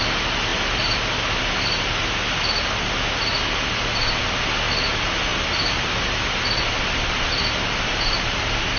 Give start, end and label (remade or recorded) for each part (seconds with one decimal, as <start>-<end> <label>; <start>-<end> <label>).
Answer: 0.0-3.3 recorded; 3.3-4.1 remade; 4.1-5.3 recorded; 5.3-7.2 remade; 7.2-8.8 recorded